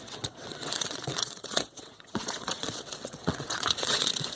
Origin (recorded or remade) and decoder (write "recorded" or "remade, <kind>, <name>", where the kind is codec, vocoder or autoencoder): remade, vocoder, WaveNeXt